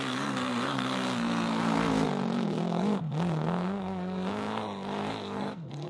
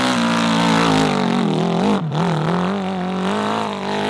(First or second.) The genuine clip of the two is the second